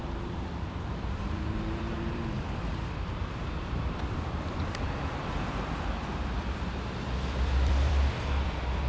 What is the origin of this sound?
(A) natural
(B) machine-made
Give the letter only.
B